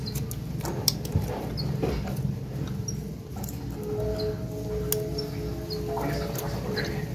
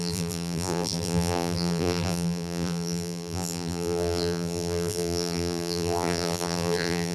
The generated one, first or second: second